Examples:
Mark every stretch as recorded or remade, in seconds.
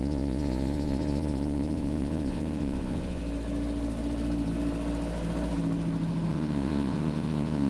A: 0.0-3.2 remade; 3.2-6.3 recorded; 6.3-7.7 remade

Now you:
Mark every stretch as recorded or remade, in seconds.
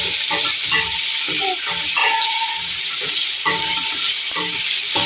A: 0.0-2.0 recorded; 2.0-3.4 remade; 3.4-5.1 recorded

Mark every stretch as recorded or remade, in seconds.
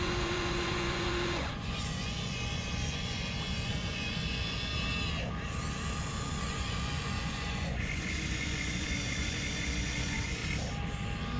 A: 0.0-4.7 remade; 4.7-6.4 recorded; 6.4-10.4 remade; 10.4-11.4 recorded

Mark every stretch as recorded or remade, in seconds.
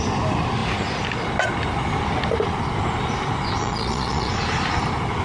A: 0.0-3.6 recorded; 3.6-4.3 remade; 4.3-5.2 recorded